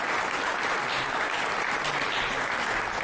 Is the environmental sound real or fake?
real